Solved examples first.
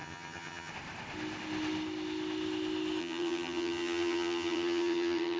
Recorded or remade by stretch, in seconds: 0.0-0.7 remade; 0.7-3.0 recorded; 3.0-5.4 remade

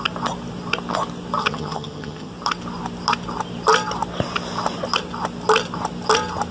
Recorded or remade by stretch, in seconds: 0.0-1.4 recorded; 1.4-2.3 remade; 2.3-6.5 recorded

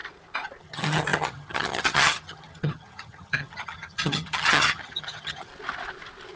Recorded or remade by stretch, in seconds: 0.0-0.6 recorded; 0.6-5.5 remade; 5.5-6.4 recorded